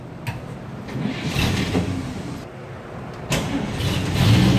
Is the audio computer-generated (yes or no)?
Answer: no